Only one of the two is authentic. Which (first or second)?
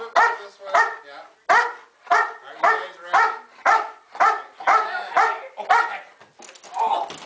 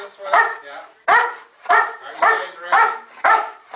first